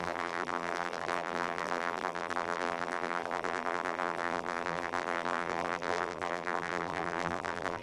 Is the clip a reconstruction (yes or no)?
yes